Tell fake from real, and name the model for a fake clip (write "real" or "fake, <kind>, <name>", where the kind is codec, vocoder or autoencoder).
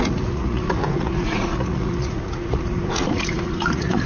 fake, vocoder, Vocos